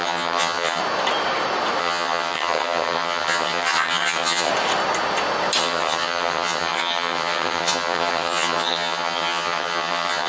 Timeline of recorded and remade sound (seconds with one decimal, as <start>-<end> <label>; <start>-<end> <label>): 0.0-0.8 remade; 0.8-1.8 recorded; 1.8-4.5 remade; 4.5-5.6 recorded; 5.6-10.3 remade